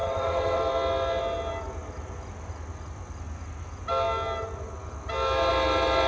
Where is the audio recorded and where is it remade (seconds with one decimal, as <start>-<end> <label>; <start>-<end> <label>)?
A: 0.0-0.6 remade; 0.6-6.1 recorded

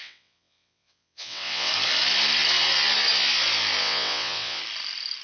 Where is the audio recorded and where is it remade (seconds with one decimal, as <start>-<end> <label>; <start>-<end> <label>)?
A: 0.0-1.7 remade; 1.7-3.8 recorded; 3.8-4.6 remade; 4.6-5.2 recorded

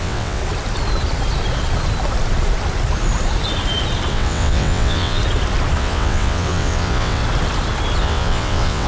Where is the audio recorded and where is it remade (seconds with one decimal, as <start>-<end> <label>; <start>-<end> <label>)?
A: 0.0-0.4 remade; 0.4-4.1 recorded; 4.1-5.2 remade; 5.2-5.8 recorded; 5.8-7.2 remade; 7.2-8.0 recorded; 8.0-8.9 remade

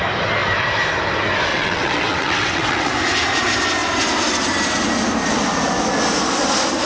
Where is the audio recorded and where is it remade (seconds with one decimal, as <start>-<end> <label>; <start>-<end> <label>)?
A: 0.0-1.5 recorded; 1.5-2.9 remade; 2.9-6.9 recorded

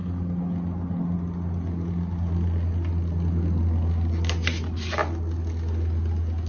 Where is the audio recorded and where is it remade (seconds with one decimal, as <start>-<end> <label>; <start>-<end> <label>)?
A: 0.0-6.5 recorded